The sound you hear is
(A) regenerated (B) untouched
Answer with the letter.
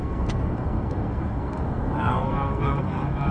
A